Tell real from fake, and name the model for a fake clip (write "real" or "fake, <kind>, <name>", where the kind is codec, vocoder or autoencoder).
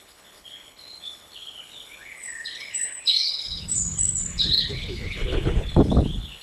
fake, codec, HILCodec